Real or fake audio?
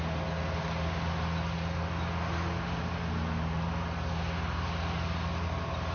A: real